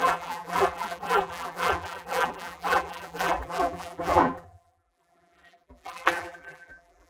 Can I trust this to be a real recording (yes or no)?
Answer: no